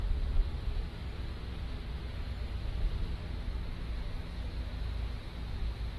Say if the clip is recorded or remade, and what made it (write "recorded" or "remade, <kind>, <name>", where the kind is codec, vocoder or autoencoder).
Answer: recorded